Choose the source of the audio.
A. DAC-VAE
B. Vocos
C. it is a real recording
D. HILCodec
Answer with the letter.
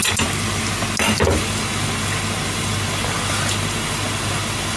C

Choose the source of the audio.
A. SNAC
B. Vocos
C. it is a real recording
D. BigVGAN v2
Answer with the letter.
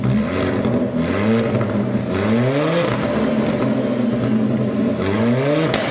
C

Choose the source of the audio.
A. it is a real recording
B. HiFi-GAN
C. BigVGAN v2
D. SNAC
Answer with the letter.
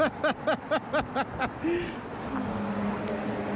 A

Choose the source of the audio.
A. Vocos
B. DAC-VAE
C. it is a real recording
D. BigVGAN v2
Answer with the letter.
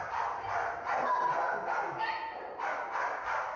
C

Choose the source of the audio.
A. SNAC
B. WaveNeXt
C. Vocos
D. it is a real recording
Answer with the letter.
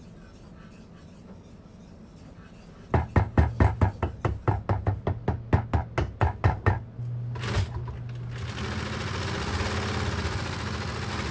D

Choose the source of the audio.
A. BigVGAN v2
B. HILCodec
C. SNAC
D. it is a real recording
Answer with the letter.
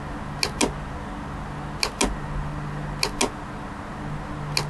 D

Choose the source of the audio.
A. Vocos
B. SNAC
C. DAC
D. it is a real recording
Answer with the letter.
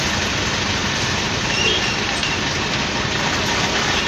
D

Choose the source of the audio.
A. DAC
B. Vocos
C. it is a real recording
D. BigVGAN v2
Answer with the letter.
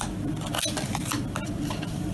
D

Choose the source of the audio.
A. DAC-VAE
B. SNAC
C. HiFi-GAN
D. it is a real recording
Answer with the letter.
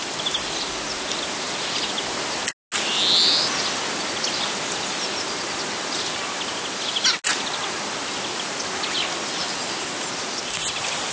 D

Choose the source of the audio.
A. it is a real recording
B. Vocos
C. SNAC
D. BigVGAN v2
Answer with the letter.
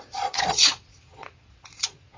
B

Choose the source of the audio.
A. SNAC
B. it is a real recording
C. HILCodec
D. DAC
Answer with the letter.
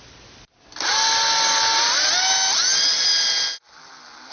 B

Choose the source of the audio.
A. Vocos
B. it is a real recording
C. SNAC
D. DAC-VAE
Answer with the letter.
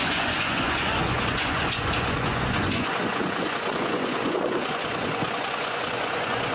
A